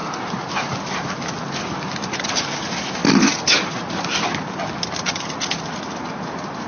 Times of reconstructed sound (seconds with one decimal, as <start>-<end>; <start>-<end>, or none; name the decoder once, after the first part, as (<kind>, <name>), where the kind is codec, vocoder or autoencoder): none